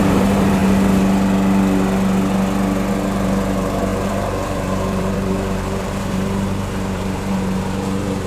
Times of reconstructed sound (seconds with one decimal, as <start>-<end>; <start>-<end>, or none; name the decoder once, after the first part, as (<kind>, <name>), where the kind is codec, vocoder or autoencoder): 0.0-0.6 (vocoder, BigVGAN v2); 2.9-8.3